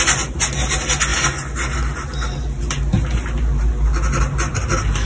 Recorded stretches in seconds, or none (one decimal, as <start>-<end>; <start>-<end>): 0.0-5.1